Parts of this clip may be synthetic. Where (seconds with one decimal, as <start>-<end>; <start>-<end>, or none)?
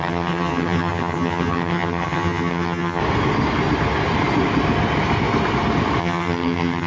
0.0-3.0; 6.0-6.9